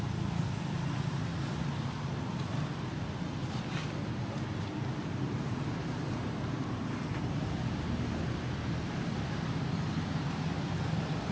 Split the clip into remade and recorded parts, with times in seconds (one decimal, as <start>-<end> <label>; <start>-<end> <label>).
0.0-11.3 recorded